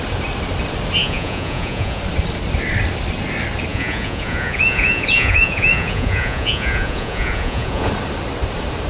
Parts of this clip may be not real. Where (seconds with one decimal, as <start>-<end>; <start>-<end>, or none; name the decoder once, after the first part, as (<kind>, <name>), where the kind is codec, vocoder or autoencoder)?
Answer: 1.0-2.0 (vocoder, Vocos); 3.7-7.9